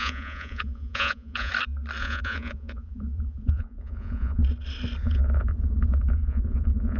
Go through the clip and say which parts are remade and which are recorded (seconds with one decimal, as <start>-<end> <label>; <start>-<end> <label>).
0.0-1.5 remade; 1.5-2.0 recorded; 2.0-4.4 remade; 4.4-5.0 recorded; 5.0-7.0 remade